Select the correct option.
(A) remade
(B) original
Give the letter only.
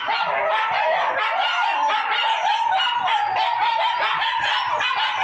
B